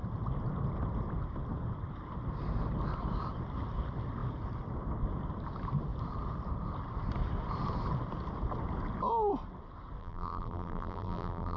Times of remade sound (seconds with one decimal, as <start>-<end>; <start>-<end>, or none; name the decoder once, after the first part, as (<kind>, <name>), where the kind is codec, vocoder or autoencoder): 10.0-11.6 (vocoder, BigVGAN v2)